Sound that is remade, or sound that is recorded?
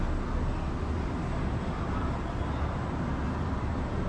recorded